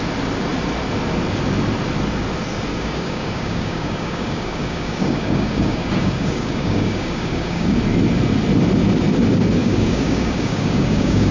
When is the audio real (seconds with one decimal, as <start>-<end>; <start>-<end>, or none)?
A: 0.0-2.7; 7.8-9.6